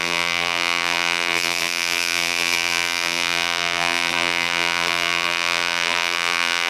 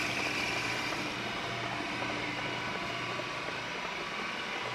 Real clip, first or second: second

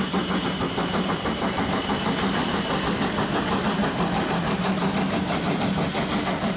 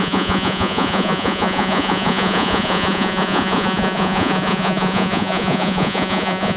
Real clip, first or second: first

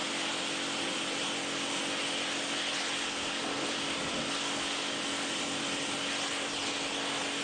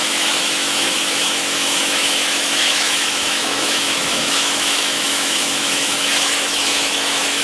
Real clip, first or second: first